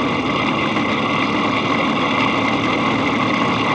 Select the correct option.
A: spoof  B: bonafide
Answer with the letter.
B